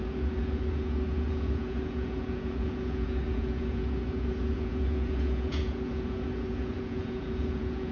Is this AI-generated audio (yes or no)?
yes